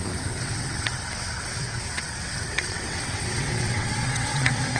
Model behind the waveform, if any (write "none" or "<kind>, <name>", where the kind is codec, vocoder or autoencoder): vocoder, WaveNeXt